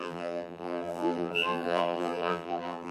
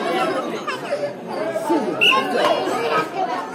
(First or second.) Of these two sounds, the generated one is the first